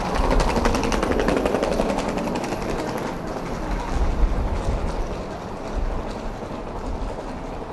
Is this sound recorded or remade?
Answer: recorded